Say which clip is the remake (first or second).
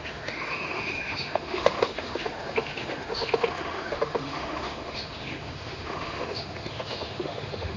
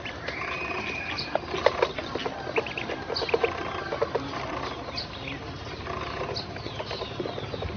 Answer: first